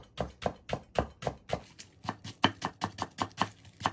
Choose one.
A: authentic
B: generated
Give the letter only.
A